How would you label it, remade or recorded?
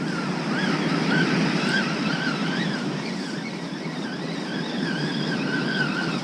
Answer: recorded